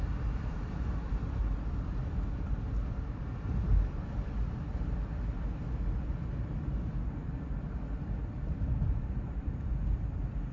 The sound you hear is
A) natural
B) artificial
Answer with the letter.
B